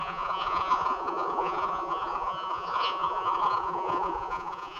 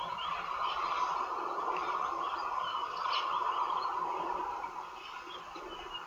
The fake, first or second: first